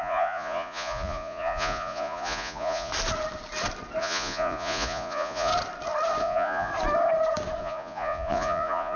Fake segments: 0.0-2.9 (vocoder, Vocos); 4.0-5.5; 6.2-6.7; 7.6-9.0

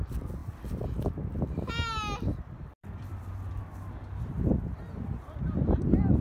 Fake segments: 2.3-3.6 (vocoder, BigVGAN v2)

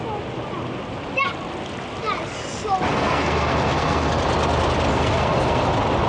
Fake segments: 2.9-4.1 (codec, SNAC); 4.9-5.6

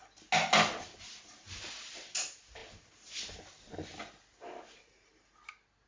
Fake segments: none

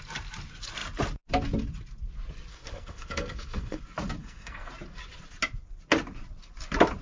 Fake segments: 2.5-3.8 (codec, SNAC); 4.2-4.7

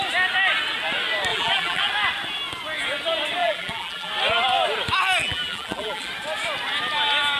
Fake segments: 1.3-1.9 (vocoder, BigVGAN v2); 3.4-4.1; 5.2-6.1

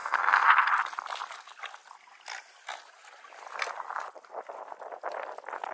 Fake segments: 0.0-0.7 (codec, SNAC)